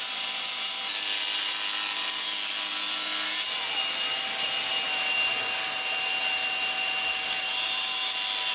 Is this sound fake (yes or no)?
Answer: no